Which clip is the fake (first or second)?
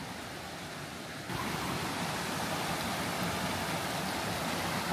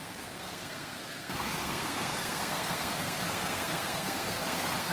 second